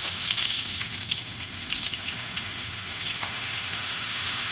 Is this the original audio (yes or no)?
no